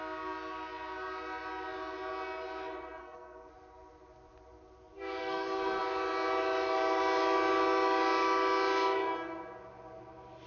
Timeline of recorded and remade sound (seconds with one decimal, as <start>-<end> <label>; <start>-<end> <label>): 0.0-3.0 recorded; 3.0-3.5 remade; 3.5-5.2 recorded; 5.2-5.8 remade; 5.8-10.5 recorded